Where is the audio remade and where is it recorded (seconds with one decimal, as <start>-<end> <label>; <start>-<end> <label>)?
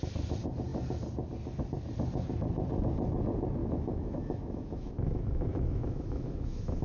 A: 0.0-3.6 recorded; 3.6-6.8 remade